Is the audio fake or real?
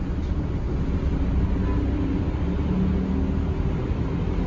real